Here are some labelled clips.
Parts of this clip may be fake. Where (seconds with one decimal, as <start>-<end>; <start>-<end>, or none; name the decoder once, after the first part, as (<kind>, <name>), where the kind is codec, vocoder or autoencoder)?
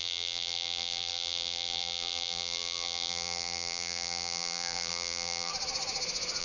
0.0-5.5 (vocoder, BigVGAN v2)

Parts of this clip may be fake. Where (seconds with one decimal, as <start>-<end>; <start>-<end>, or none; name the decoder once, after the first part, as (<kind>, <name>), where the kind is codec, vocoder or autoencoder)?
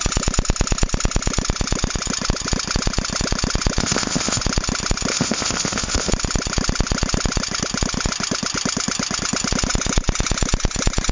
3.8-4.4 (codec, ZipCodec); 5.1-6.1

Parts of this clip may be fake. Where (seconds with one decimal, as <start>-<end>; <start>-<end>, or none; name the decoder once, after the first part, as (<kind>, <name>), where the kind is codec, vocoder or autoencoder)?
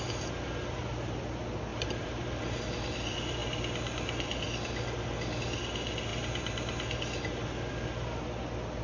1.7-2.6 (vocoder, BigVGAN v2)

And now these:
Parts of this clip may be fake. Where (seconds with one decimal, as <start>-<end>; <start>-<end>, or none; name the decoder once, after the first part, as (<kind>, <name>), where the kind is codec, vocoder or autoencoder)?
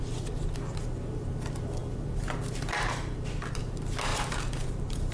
4.1-5.1 (vocoder, BigVGAN v2)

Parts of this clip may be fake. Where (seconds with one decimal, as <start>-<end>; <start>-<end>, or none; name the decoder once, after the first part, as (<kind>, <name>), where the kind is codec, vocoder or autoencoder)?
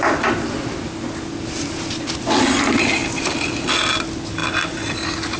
none